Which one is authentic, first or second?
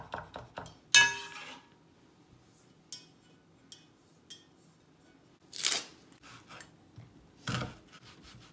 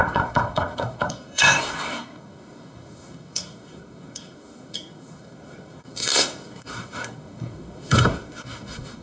first